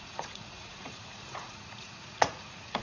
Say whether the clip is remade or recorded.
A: remade